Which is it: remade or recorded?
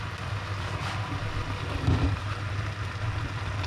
remade